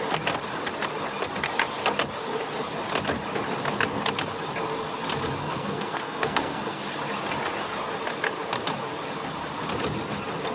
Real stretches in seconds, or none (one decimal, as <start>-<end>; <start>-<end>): 0.0-5.4; 6.8-10.5